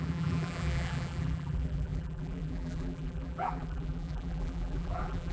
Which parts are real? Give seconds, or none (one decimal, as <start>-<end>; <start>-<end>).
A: none